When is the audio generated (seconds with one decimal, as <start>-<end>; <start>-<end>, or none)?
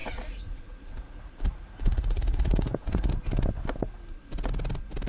0.0-3.1